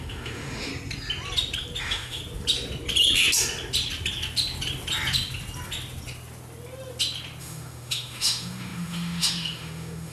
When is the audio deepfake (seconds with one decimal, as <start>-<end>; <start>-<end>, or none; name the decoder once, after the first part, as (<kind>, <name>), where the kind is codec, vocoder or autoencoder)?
0.0-0.7 (autoencoder, DAC-VAE); 1.8-2.2; 7.4-10.1